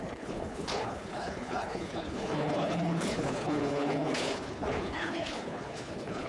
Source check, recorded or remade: remade